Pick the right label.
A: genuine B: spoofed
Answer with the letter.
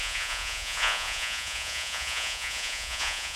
B